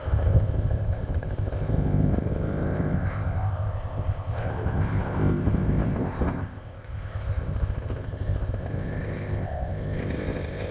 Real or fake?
fake